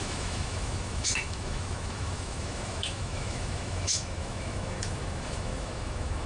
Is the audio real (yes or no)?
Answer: no